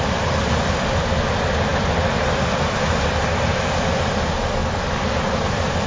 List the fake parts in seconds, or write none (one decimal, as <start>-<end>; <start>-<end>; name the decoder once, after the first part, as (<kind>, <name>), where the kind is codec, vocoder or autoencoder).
0.0-4.6 (vocoder, BigVGAN v2); 5.1-5.9